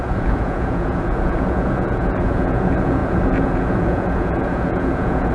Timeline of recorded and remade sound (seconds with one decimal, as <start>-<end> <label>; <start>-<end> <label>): 0.0-5.3 remade